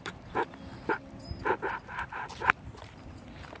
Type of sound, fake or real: fake